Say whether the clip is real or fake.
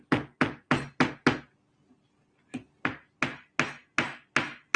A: real